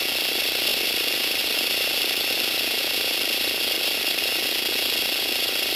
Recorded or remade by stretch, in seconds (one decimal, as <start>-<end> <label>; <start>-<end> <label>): 0.0-0.7 recorded; 0.7-4.2 remade; 4.2-5.8 recorded